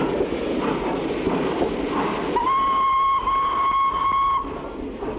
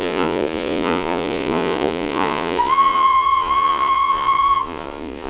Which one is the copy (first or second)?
second